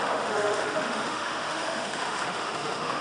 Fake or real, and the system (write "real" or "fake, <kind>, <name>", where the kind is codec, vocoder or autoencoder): fake, autoencoder, DAC-VAE